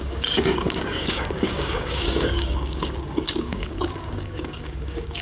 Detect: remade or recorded remade